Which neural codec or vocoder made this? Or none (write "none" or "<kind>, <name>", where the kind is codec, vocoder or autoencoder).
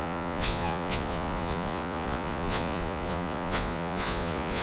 vocoder, Vocos